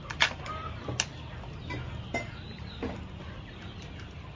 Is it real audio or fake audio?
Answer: real